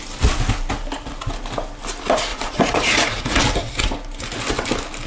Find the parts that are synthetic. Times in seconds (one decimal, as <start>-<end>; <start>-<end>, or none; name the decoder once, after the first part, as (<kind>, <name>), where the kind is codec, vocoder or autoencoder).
2.3-3.4 (vocoder, Vocos)